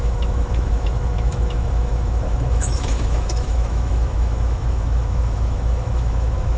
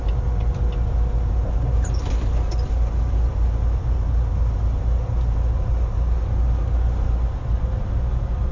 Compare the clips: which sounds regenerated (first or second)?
first